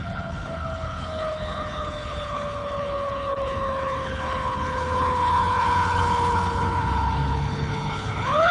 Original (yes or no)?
no